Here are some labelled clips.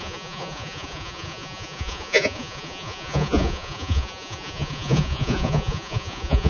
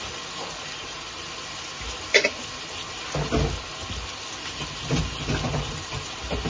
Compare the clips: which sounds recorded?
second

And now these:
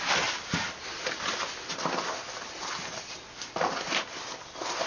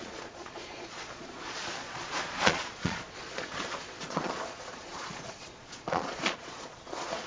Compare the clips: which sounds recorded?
first